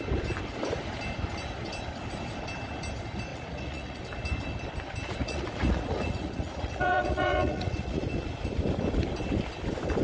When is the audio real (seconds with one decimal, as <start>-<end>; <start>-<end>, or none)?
0.0-3.3; 4.0-5.2; 8.0-10.0